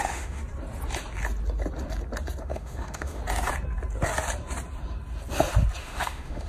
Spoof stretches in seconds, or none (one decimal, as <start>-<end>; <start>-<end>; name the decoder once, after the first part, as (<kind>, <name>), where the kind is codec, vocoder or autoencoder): 0.0-0.4 (autoencoder, DAC-VAE); 2.4-3.2; 5.8-6.5